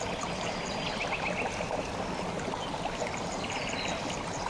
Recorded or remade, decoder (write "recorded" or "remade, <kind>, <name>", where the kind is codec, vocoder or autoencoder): recorded